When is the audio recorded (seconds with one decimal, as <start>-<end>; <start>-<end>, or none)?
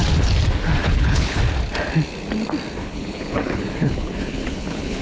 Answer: 0.0-0.8; 1.4-2.8